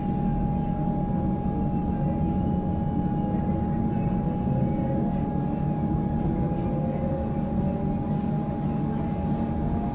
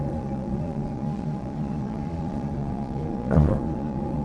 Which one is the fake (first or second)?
second